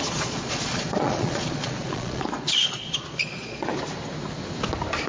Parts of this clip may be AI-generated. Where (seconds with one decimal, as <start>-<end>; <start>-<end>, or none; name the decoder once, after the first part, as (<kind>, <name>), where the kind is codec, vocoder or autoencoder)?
0.0-3.7 (vocoder, Vocos)